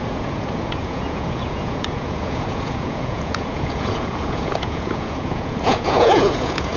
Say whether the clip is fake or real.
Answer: fake